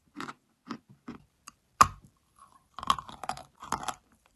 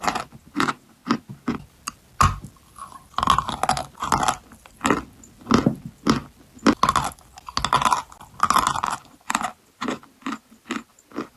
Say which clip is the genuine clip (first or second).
second